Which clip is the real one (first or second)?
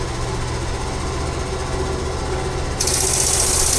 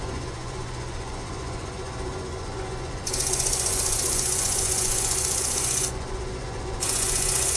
first